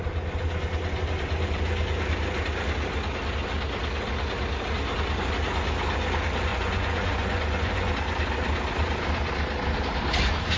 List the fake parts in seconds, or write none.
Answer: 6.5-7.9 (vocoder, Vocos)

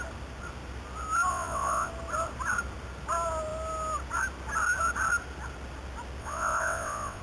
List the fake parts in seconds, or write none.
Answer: 1.3-1.9 (vocoder, WaveNeXt); 6.2-7.2